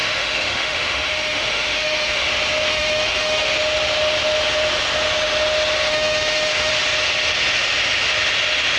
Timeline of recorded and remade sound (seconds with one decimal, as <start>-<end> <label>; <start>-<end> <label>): 0.0-2.3 remade; 2.3-2.7 recorded; 2.7-3.5 remade; 3.5-5.9 recorded; 5.9-6.7 remade; 6.7-8.8 recorded

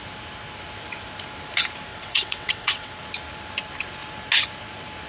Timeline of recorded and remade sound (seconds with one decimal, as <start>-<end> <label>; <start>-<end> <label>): 0.0-1.9 recorded; 1.9-3.0 remade; 3.0-5.1 recorded

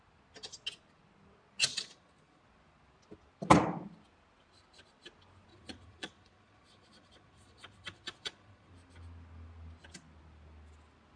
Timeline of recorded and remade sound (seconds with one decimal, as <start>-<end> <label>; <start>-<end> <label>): 0.0-1.7 recorded; 1.7-2.4 remade; 2.4-5.5 recorded; 5.5-8.7 remade; 8.7-11.2 recorded

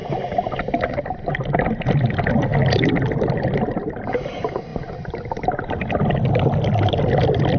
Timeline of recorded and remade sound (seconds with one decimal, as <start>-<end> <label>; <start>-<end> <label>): 0.0-7.6 recorded

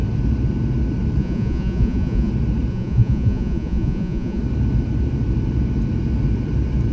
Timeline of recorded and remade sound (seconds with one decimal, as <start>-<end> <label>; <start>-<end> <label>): 0.0-1.2 recorded; 1.2-2.3 remade; 2.3-2.7 recorded; 2.7-4.4 remade; 4.4-6.9 recorded

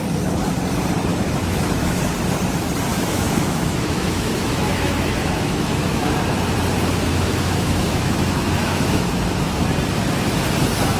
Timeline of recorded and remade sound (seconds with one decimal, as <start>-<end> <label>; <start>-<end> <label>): 0.0-1.1 recorded; 1.1-2.0 remade; 2.0-2.9 recorded; 2.9-6.0 remade; 6.0-7.1 recorded; 7.1-9.0 remade; 9.0-11.0 recorded

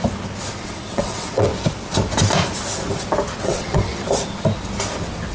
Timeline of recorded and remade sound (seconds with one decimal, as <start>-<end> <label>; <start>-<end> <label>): 0.0-0.6 recorded; 0.6-1.5 remade; 1.5-3.4 recorded; 3.4-3.9 remade; 3.9-5.3 recorded

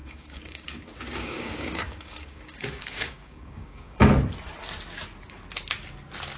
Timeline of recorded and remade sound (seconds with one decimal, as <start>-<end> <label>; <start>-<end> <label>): 0.0-4.0 remade; 4.0-6.4 recorded